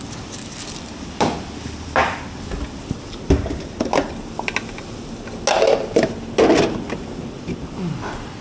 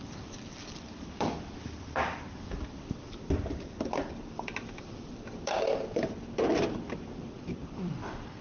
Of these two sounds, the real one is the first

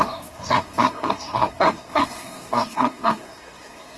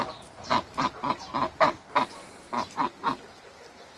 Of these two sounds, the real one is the second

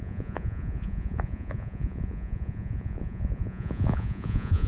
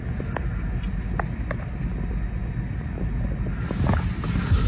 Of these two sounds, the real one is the second